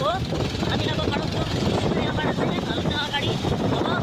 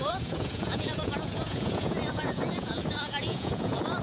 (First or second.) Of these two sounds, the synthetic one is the second